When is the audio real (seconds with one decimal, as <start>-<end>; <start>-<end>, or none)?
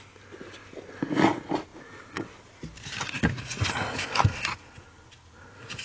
0.0-5.8